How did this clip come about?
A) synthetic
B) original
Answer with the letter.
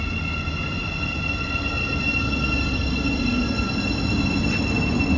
B